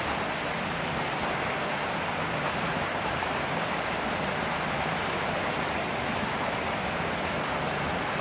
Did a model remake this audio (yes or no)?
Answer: yes